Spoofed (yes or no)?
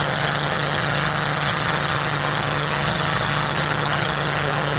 yes